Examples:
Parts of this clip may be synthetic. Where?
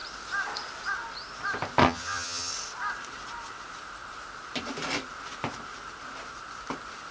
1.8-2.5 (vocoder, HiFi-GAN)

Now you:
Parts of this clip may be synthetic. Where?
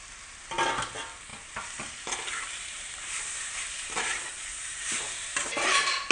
1.3-5.0 (vocoder, BigVGAN v2)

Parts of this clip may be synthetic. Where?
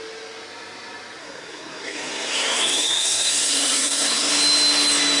1.2-4.3 (codec, SNAC)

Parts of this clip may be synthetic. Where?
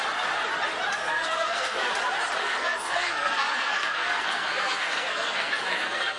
1.0-1.9 (codec, SNAC); 2.4-6.2